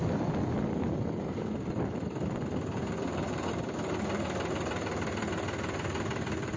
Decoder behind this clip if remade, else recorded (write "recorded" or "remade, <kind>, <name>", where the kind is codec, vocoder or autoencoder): remade, vocoder, BigVGAN v2